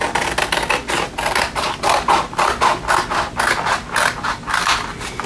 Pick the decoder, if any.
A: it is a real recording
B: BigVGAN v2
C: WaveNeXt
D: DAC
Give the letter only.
A